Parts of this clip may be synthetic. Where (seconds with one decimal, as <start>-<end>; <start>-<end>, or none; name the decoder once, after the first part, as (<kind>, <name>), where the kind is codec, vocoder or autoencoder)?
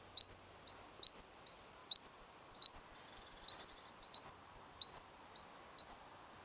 1.8-4.7 (vocoder, BigVGAN v2)